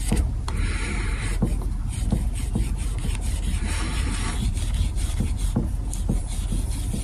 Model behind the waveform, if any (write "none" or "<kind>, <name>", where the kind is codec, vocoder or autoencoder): vocoder, BigVGAN v2